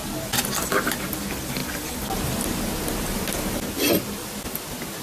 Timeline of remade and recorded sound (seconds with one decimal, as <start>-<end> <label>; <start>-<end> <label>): 0.0-5.0 recorded